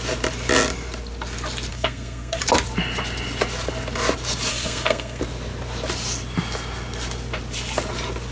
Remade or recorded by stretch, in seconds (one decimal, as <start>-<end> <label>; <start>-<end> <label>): 0.0-1.7 recorded; 1.7-2.4 remade; 2.4-4.5 recorded; 4.5-5.2 remade; 5.2-8.3 recorded